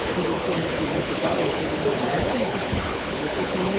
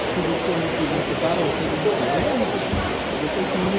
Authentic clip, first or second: second